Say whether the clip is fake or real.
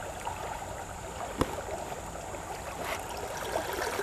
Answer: real